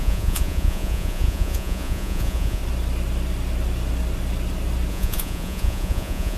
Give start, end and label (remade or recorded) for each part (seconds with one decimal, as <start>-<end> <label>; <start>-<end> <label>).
0.0-2.6 remade; 2.6-4.9 recorded; 4.9-6.4 remade